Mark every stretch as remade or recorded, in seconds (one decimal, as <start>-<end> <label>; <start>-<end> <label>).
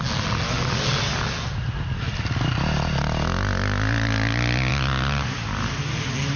0.0-6.4 recorded